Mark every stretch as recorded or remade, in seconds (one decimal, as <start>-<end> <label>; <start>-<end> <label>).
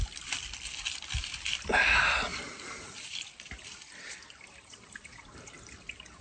0.0-6.2 recorded